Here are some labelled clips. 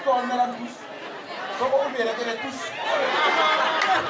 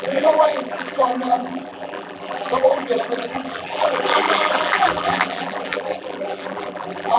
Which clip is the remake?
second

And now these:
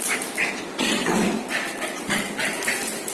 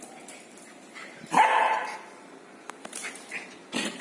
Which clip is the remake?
second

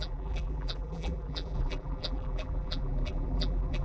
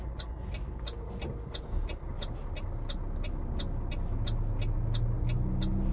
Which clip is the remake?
first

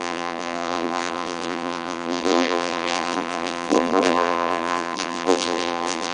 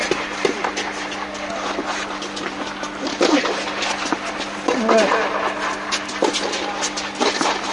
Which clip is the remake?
first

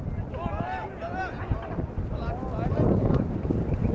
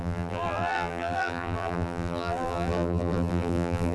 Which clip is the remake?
second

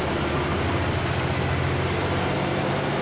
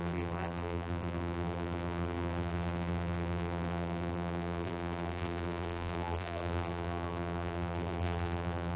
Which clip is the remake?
second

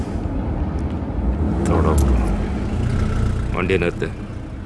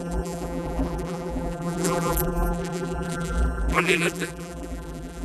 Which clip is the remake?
second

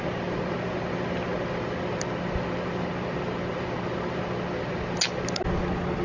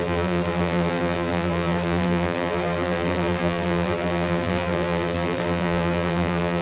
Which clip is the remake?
second